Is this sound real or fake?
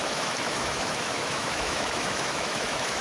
fake